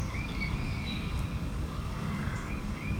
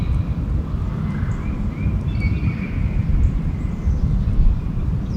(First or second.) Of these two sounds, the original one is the second